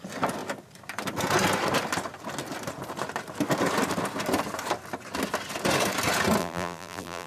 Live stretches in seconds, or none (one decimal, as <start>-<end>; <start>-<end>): 0.0-6.4